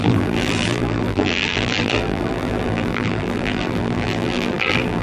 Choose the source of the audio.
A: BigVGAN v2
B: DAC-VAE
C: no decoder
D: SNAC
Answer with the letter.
A